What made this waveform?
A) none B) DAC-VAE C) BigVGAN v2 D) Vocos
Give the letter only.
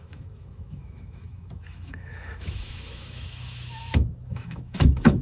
B